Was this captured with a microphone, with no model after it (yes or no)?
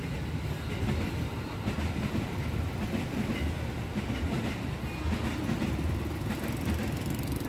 yes